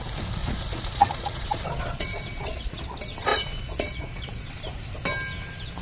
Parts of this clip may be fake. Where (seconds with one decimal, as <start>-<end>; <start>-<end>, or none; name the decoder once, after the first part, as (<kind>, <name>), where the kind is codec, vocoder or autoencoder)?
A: 0.4-2.8 (vocoder, Vocos); 3.3-4.5